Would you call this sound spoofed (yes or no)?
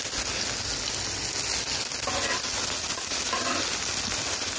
no